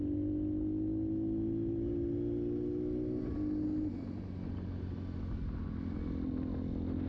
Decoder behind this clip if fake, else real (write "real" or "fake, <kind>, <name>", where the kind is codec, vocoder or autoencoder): real